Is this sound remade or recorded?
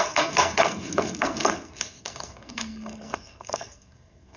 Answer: remade